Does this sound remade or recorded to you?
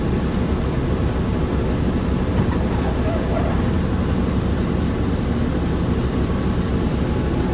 recorded